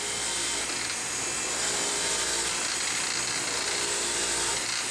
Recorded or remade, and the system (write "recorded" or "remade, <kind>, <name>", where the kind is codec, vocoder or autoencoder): recorded